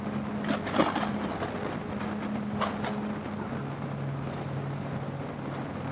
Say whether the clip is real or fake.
real